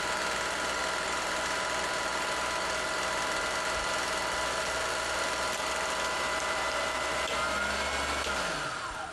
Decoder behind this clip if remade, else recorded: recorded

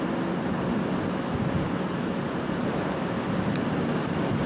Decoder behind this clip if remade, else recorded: recorded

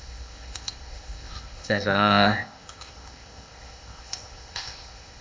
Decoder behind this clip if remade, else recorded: remade, codec, ZipCodec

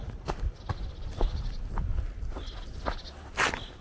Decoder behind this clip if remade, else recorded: recorded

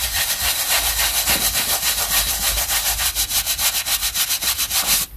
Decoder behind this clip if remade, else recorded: recorded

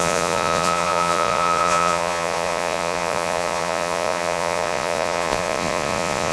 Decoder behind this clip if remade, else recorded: remade, vocoder, Vocos